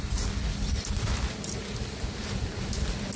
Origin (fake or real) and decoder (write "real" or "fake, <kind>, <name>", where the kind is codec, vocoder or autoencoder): real